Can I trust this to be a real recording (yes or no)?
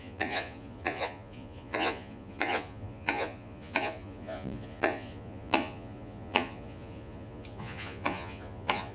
no